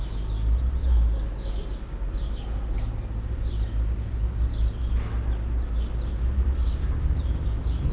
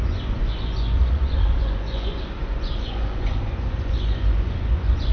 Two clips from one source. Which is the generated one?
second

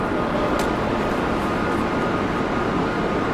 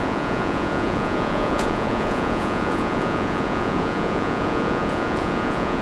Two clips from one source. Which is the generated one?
second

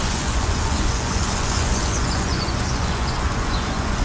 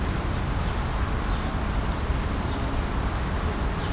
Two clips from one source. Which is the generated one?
first